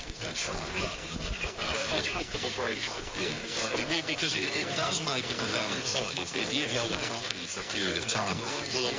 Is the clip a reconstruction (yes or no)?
yes